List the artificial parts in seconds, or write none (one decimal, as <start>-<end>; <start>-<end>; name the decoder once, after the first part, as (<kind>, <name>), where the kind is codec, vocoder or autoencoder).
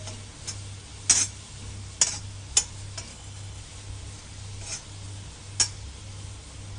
3.1-3.6 (codec, HILCodec)